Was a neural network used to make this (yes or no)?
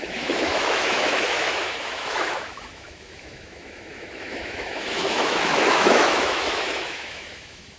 yes